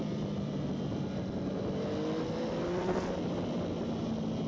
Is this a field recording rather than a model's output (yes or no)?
yes